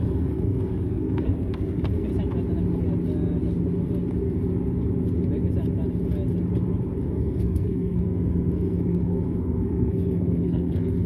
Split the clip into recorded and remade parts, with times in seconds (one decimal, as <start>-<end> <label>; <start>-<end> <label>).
0.0-2.1 remade; 2.1-7.1 recorded; 7.1-11.1 remade